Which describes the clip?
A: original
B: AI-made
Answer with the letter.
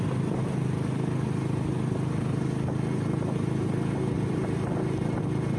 A